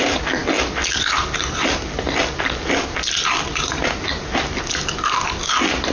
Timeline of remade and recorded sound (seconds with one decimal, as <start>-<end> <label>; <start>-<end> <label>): 0.0-5.9 recorded